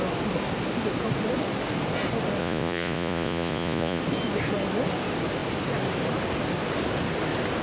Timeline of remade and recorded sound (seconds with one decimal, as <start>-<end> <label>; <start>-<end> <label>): 0.0-2.4 recorded; 2.4-4.0 remade; 4.0-7.6 recorded